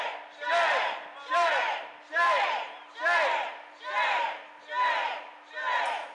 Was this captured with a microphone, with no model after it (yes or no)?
yes